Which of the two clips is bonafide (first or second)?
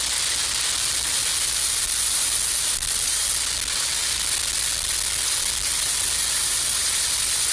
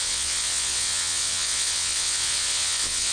first